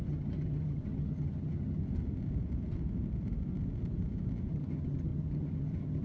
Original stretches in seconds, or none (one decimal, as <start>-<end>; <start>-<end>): 1.8-4.5